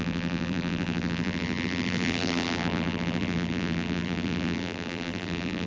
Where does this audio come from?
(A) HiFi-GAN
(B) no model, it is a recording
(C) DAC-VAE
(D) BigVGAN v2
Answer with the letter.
D